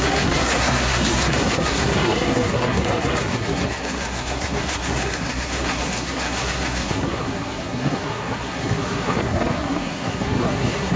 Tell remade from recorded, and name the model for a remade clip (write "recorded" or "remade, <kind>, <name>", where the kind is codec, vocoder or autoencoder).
remade, codec, SNAC